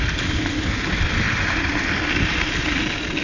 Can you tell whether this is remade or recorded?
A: recorded